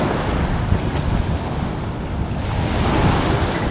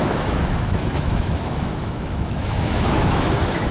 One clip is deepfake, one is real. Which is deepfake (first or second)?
second